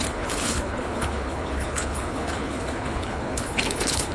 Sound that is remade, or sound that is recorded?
remade